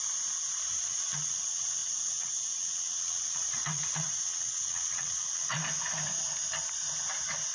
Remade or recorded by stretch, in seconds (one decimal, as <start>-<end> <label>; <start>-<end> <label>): 0.0-0.7 recorded; 0.7-5.6 remade; 5.6-7.5 recorded